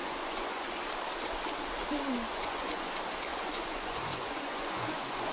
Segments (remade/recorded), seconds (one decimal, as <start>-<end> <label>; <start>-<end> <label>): 0.0-0.8 remade; 0.8-2.3 recorded; 2.3-2.9 remade; 2.9-3.3 recorded; 3.3-5.3 remade

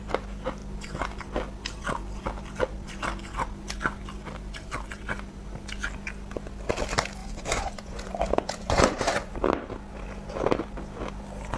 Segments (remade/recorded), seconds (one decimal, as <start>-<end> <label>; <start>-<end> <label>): 0.0-7.2 recorded; 7.2-9.3 remade; 9.3-11.6 recorded

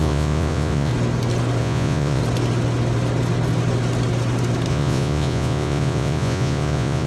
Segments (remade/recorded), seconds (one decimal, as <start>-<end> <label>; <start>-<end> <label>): 0.0-0.9 remade; 0.9-1.6 recorded; 1.6-2.2 remade; 2.2-4.7 recorded; 4.7-7.1 remade

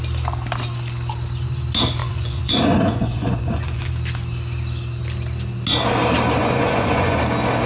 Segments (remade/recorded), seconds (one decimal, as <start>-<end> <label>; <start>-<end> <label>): 0.0-2.0 recorded; 2.0-3.9 remade; 3.9-6.4 recorded; 6.4-7.2 remade; 7.2-7.7 recorded